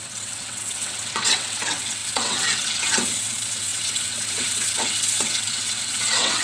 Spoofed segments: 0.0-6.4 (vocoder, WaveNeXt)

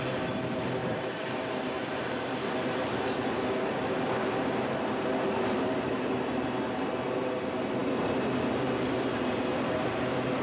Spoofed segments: 0.8-1.5 (vocoder, BigVGAN v2)

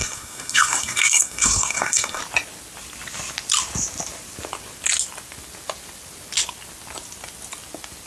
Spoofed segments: 0.0-2.2 (codec, SNAC)